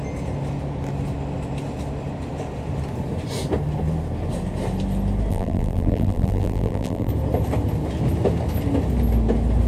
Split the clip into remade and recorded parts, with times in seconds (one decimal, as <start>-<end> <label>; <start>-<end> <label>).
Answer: 0.0-5.3 recorded; 5.3-7.1 remade; 7.1-9.7 recorded